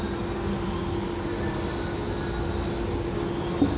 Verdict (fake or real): real